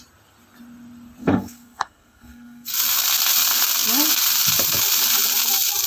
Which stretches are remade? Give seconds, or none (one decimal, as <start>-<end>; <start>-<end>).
1.2-2.7